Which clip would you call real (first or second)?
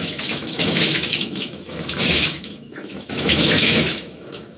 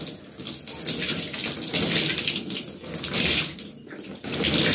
second